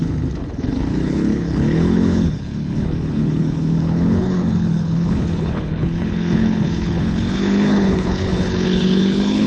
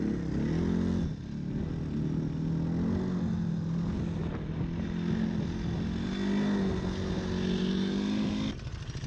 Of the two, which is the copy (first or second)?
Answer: first